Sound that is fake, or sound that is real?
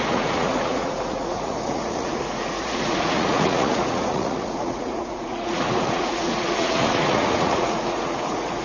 fake